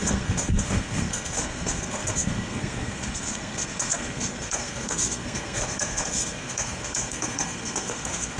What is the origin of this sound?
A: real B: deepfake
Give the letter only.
B